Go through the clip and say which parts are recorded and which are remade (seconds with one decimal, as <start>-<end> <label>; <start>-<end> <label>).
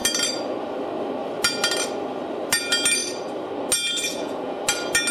0.0-4.1 recorded; 4.1-4.6 remade; 4.6-5.1 recorded